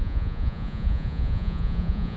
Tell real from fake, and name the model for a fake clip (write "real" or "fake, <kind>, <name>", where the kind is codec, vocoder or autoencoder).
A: fake, vocoder, Vocos